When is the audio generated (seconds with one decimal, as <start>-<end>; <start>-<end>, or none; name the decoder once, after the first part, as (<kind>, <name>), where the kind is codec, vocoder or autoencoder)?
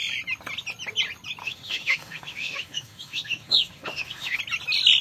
1.4-4.4 (autoencoder, DAC-VAE)